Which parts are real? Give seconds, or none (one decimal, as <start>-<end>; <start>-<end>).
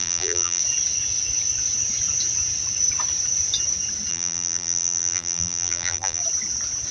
0.6-4.1; 6.2-6.9